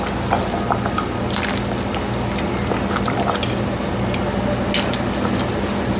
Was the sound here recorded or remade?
recorded